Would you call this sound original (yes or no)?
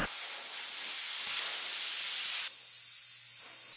yes